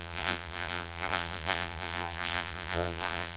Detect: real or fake fake